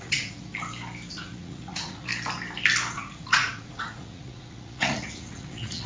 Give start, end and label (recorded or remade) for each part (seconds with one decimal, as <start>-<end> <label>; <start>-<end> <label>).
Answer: 0.0-0.5 remade; 0.5-1.1 recorded; 1.1-2.1 remade; 2.1-2.9 recorded; 2.9-5.9 remade